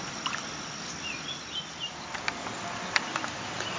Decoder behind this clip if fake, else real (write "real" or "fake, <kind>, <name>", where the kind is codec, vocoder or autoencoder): real